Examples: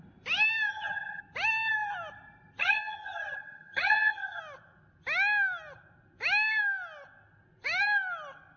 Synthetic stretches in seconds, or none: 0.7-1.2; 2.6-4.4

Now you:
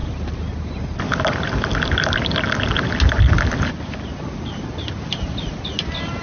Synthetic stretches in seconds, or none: none

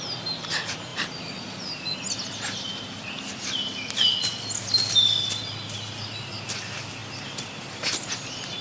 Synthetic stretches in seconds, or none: none